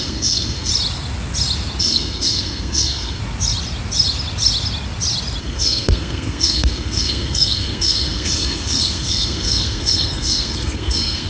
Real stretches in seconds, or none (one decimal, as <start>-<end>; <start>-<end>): 0.7-1.8; 3.2-5.4